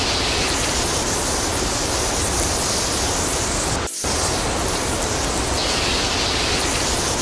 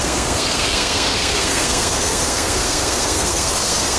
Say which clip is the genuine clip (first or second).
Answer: first